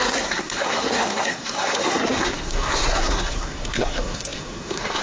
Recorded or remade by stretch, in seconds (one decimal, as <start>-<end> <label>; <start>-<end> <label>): 0.0-5.0 remade